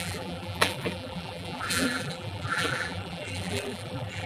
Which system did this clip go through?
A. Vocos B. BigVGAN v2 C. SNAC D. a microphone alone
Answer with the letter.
B